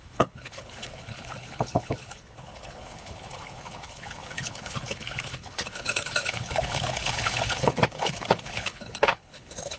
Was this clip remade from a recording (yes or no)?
yes